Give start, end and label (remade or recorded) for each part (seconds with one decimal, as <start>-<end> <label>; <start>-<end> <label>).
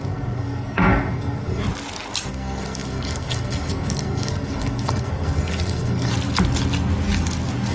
0.0-1.6 remade; 1.6-2.3 recorded; 2.3-6.1 remade; 6.1-7.7 recorded